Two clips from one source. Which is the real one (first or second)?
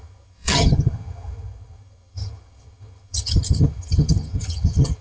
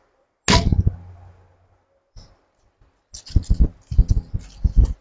second